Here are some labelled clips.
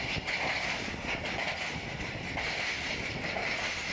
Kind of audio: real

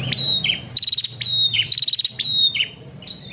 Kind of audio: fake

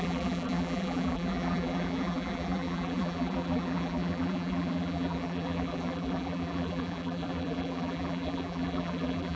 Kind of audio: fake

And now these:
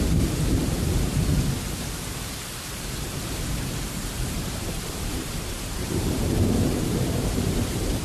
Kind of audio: fake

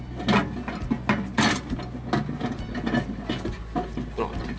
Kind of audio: real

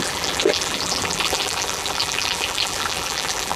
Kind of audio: fake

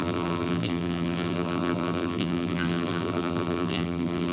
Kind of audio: fake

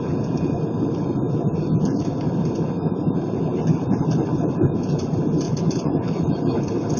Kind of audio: fake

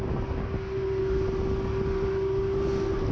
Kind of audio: real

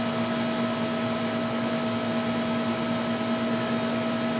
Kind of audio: real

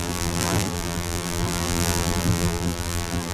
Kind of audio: fake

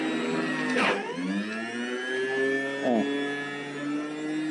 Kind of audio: real